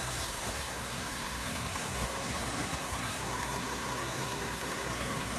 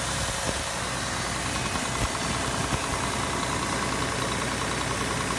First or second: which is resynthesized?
first